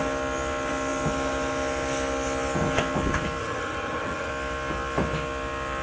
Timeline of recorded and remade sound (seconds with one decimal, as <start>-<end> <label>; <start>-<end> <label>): 0.0-3.4 recorded; 3.4-4.3 remade; 4.3-5.8 recorded

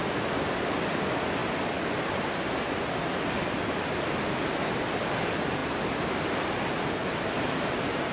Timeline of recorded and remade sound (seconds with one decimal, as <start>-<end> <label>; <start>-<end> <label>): 0.0-8.1 recorded

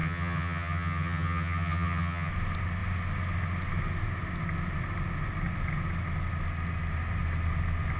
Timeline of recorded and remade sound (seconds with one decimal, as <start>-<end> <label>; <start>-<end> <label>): 0.0-2.3 remade; 2.3-8.0 recorded

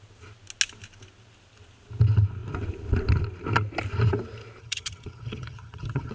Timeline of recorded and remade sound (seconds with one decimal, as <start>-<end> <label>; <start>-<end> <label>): 0.0-4.6 recorded; 4.6-6.1 remade

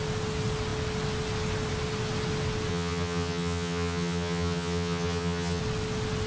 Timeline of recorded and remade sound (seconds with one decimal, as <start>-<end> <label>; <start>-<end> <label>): 0.0-2.7 recorded; 2.7-5.6 remade; 5.6-6.3 recorded

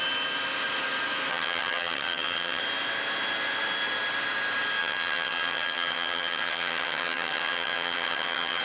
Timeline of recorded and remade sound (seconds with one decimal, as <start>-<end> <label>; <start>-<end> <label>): 0.0-1.3 recorded; 1.3-2.6 remade; 2.6-4.8 recorded; 4.8-8.6 remade

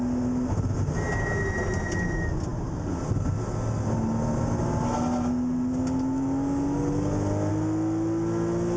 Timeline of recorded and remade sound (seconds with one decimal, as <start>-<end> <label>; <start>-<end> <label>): 0.0-8.8 recorded

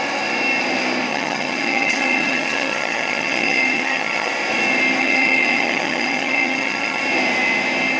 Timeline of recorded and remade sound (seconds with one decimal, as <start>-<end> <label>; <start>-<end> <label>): 0.0-1.1 recorded; 1.1-4.3 remade; 4.3-5.0 recorded; 5.0-7.0 remade; 7.0-8.0 recorded